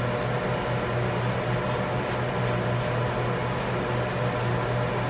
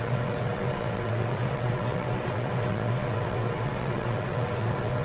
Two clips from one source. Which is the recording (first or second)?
first